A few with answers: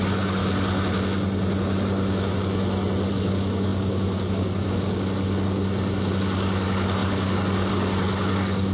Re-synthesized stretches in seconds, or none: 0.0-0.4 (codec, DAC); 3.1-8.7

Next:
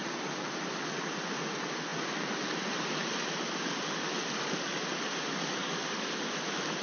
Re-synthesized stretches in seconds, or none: 5.6-6.1 (codec, DAC)

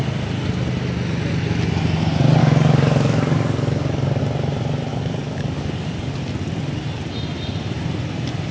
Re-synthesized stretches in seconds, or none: 2.4-4.2 (codec, DAC); 4.9-6.1

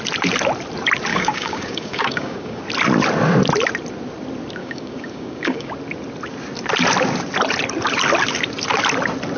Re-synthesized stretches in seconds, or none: 1.1-2.6 (codec, DAC); 4.6-5.7

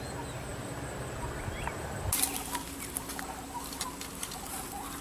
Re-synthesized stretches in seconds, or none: none

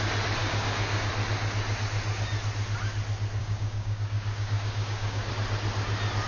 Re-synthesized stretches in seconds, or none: 0.4-1.1 (codec, DAC); 3.4-5.3